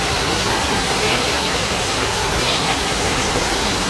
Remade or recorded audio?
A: remade